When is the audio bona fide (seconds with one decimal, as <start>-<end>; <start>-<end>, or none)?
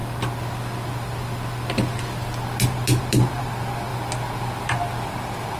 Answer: 0.0-5.6